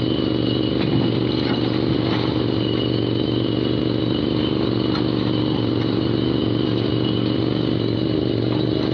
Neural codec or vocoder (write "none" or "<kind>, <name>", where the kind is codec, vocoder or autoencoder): none